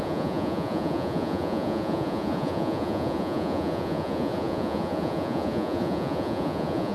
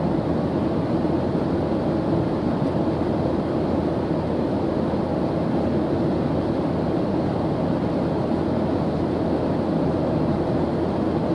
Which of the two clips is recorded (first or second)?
second